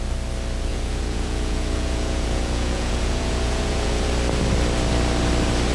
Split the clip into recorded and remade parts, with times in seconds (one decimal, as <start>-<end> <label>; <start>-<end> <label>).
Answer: 0.0-0.7 recorded; 0.7-4.1 remade; 4.1-5.7 recorded